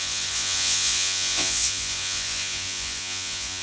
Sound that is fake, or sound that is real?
fake